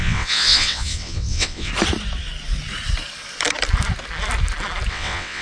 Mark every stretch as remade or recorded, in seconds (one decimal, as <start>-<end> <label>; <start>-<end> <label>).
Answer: 0.0-1.7 remade; 1.7-4.9 recorded; 4.9-5.4 remade